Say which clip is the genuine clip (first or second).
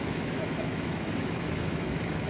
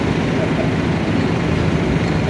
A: second